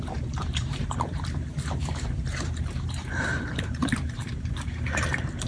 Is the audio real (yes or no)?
no